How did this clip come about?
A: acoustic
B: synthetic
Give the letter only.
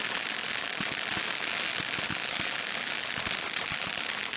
A